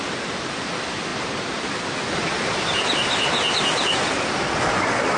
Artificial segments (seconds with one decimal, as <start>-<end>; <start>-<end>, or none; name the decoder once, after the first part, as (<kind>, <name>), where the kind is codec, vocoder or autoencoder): none